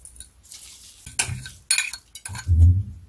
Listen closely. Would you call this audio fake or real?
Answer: real